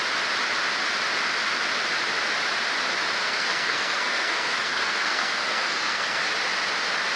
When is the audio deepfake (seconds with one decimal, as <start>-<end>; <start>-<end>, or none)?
3.2-6.3